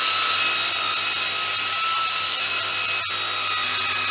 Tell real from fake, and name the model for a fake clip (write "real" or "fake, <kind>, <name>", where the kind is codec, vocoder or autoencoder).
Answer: real